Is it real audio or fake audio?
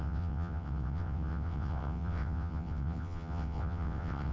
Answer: fake